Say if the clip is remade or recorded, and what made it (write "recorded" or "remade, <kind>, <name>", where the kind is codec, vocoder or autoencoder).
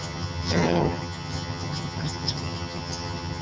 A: remade, vocoder, HiFi-GAN